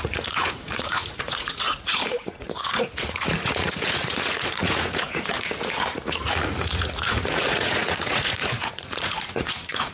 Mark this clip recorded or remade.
remade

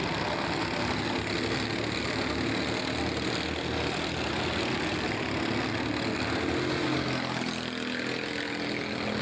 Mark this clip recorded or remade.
recorded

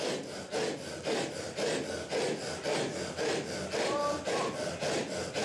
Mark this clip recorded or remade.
recorded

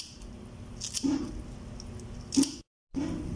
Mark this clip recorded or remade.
recorded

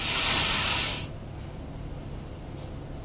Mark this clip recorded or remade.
recorded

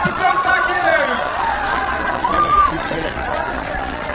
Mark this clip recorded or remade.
remade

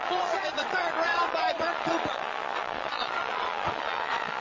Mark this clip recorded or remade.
remade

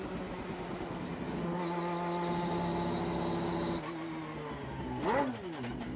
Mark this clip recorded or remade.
recorded